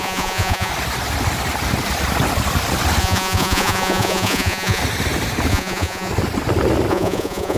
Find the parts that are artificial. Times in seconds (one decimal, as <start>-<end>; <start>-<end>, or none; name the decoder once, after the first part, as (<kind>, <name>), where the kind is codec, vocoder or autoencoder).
0.0-0.7 (vocoder, Vocos); 3.0-4.8; 5.5-6.1; 6.9-7.6